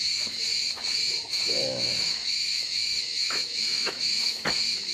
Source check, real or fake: fake